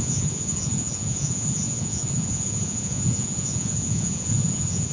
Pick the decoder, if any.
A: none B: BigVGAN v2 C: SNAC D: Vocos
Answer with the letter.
D